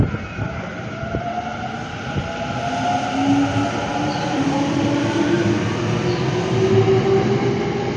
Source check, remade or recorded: recorded